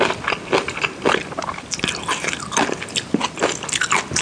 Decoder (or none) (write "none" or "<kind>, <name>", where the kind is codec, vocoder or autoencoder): none